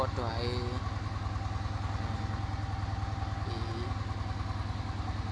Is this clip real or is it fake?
real